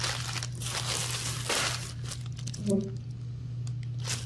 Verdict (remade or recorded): recorded